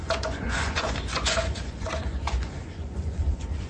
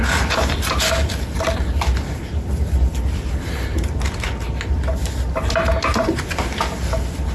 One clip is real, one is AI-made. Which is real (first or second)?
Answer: second